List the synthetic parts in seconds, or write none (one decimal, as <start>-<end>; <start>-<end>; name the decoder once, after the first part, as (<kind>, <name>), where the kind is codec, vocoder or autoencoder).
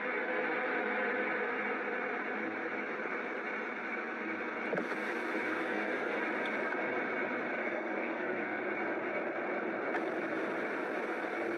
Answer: 5.6-6.2 (codec, SNAC); 7.6-8.6